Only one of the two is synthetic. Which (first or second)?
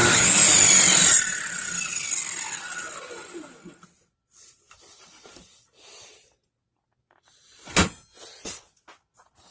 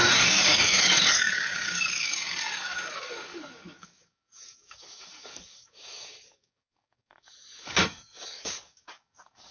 second